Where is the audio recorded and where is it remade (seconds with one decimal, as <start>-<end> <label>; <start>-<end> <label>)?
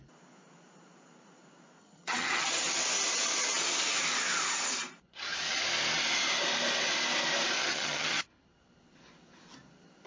0.0-1.8 recorded; 1.8-2.8 remade; 2.8-7.6 recorded; 7.6-8.2 remade; 8.2-10.1 recorded